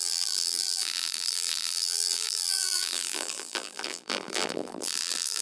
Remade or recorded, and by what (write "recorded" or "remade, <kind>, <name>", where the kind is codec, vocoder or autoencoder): remade, vocoder, BigVGAN v2